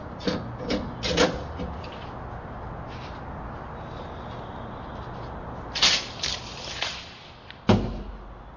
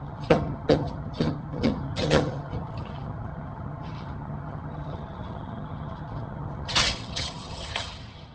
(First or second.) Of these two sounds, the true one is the first